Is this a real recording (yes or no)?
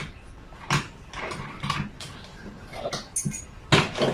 yes